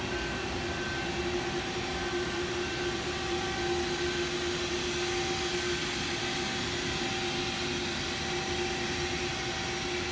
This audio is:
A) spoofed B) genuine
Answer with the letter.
B